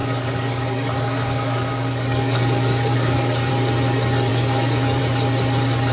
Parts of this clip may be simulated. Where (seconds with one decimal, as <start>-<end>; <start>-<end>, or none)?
0.0-3.5; 4.3-5.0